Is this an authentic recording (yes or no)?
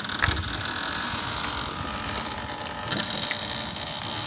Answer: yes